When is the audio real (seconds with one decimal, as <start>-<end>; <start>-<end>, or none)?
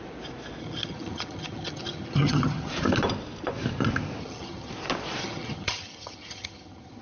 0.0-0.6; 2.7-4.2; 4.7-5.2